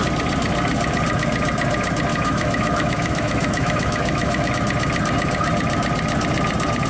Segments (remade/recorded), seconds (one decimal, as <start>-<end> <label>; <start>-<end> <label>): 0.0-2.1 recorded; 2.1-4.5 remade; 4.5-6.9 recorded